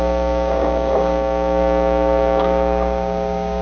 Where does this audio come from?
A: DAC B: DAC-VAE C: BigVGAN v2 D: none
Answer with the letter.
A